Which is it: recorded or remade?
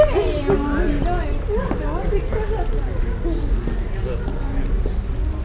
recorded